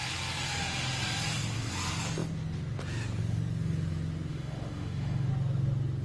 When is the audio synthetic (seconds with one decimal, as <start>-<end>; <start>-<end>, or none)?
4.3-5.3